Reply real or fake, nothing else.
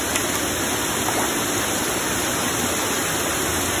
real